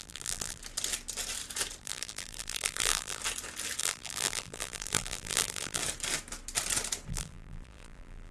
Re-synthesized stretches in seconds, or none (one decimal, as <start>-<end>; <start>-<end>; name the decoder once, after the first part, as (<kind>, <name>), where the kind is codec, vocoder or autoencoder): 0.0-0.6 (vocoder, BigVGAN v2); 1.8-3.2; 3.8-5.8; 7.1-8.3